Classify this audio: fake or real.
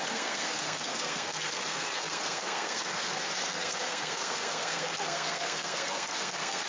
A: fake